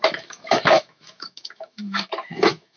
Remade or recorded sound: remade